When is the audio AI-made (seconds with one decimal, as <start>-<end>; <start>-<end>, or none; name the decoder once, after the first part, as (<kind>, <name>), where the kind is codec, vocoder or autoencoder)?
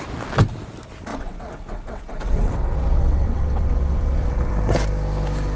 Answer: 1.1-4.5 (vocoder, WaveNeXt)